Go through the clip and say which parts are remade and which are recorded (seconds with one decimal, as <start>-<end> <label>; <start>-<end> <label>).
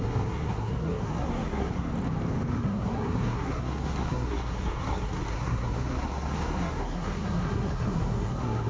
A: 0.0-1.9 remade; 1.9-2.5 recorded; 2.5-8.7 remade